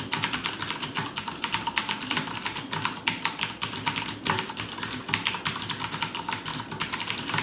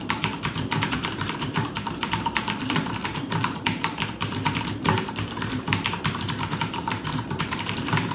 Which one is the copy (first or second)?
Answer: second